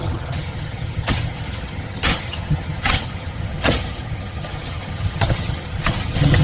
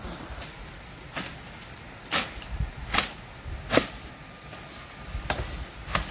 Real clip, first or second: second